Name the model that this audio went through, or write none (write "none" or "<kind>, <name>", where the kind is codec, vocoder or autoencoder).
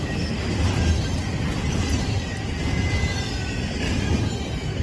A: none